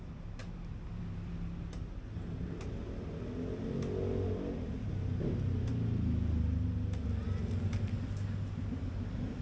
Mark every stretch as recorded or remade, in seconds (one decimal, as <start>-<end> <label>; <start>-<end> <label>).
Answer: 0.0-9.4 recorded